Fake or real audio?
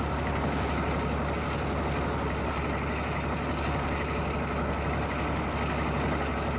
real